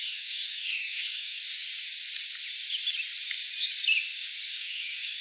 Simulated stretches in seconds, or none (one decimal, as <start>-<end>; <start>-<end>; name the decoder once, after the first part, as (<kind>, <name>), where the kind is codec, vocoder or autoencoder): 0.0-1.4 (codec, DAC); 4.5-5.2